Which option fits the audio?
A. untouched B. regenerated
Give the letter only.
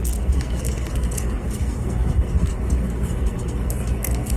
B